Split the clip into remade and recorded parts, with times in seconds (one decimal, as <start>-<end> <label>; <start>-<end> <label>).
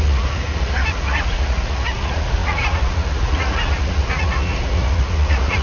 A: 0.0-5.6 remade